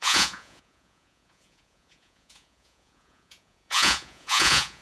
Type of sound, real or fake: fake